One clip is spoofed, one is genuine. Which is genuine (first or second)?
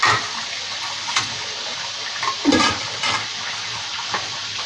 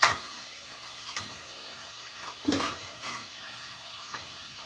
first